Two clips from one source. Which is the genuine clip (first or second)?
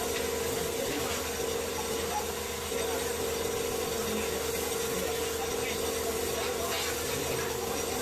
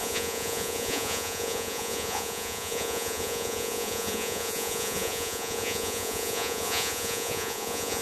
first